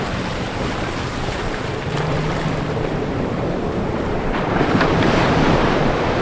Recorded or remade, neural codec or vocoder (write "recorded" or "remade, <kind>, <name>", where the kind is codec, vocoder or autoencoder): remade, vocoder, BigVGAN v2